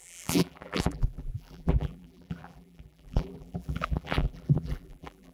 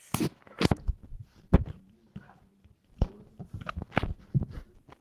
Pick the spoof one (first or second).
first